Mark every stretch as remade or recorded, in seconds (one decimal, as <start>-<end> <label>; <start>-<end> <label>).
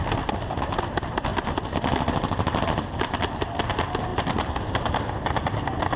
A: 0.0-4.1 recorded; 4.1-5.1 remade; 5.1-6.0 recorded